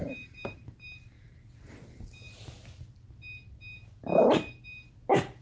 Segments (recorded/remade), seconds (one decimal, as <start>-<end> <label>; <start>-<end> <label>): 0.0-1.5 remade; 1.5-5.4 recorded